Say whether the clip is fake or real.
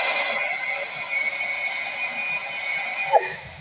real